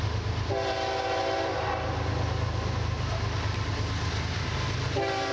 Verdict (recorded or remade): recorded